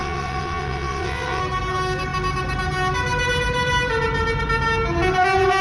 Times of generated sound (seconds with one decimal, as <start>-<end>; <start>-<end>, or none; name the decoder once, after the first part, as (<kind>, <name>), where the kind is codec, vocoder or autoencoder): 0.0-1.4 (vocoder, WaveNeXt)